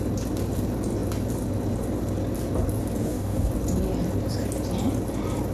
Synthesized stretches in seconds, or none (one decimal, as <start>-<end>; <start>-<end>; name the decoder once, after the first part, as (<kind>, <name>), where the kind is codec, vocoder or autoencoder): 3.0-3.5 (codec, DAC)